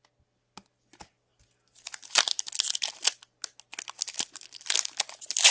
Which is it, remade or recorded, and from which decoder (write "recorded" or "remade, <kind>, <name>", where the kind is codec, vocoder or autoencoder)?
recorded